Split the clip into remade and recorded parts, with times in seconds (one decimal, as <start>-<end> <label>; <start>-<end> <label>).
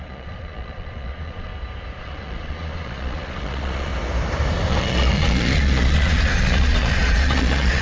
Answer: 0.0-1.5 remade; 1.5-2.0 recorded; 2.0-3.9 remade; 3.9-4.7 recorded; 4.7-7.8 remade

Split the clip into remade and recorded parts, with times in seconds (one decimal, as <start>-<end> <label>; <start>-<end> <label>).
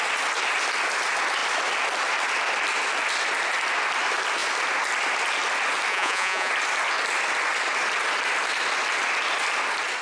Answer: 0.0-5.9 recorded; 5.9-6.5 remade; 6.5-10.0 recorded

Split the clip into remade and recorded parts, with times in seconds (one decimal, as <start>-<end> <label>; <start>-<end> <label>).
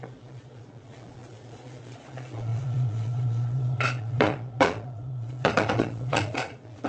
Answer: 0.0-6.9 remade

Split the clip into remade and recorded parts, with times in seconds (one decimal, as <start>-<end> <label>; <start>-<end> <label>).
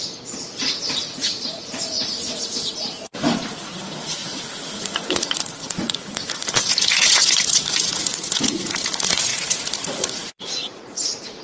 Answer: 0.0-11.4 remade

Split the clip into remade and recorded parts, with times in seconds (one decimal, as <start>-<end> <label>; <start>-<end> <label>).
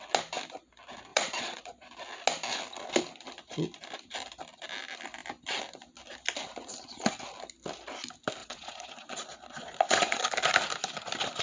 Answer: 0.0-1.1 recorded; 1.1-1.9 remade; 1.9-8.4 recorded; 8.4-10.2 remade; 10.2-11.4 recorded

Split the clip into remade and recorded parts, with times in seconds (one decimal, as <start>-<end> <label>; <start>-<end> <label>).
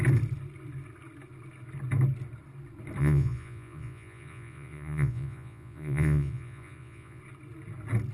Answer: 0.0-3.0 recorded; 3.0-7.2 remade; 7.2-8.1 recorded